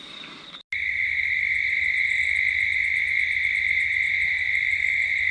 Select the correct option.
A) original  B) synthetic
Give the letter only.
A